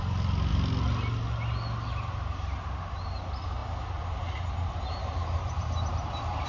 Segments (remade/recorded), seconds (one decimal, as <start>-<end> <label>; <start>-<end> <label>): 0.0-6.5 recorded